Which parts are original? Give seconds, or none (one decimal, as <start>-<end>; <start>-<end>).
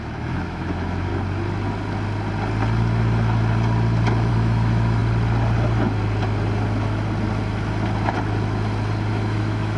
1.1-4.3; 5.0-9.1